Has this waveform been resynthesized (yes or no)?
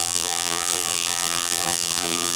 yes